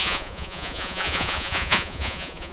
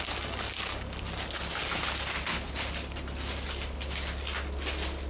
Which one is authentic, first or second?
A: second